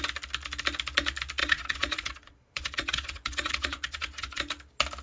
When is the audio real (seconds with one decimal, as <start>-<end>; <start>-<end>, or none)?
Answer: 0.0-1.4; 4.4-5.0